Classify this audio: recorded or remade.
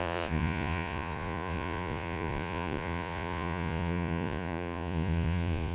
remade